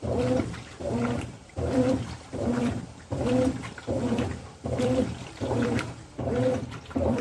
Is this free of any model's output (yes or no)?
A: no